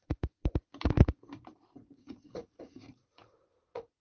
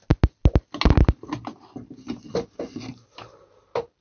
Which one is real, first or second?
second